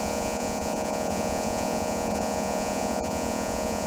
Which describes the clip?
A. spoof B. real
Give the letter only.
A